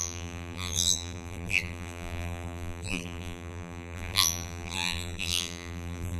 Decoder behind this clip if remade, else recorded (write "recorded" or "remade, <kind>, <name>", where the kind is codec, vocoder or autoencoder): remade, vocoder, BigVGAN v2